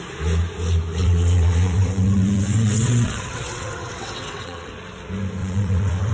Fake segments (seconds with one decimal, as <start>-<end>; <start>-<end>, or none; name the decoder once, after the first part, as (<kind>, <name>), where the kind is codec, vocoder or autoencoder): 1.0-4.7 (vocoder, WaveNeXt); 5.4-6.1